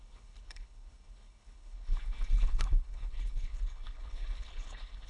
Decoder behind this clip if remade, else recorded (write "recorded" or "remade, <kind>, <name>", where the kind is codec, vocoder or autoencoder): remade, codec, HILCodec